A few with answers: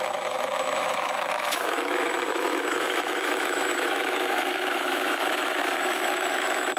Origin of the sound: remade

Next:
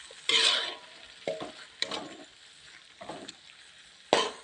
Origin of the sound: recorded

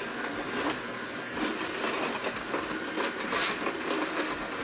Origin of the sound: recorded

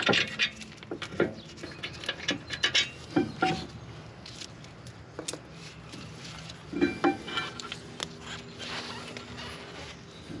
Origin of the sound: recorded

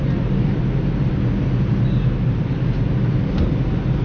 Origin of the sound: recorded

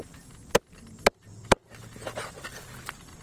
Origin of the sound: recorded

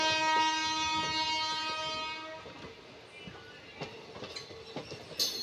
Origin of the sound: recorded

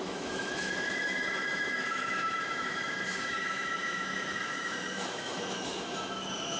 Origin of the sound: remade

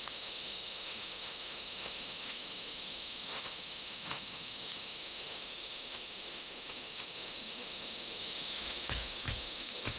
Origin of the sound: remade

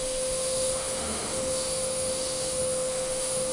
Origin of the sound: remade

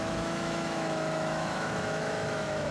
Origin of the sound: remade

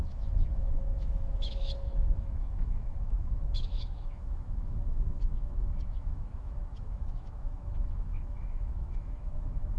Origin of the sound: remade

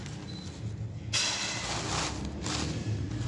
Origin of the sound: recorded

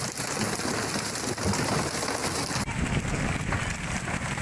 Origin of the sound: recorded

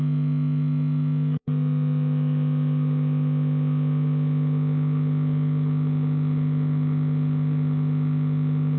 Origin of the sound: remade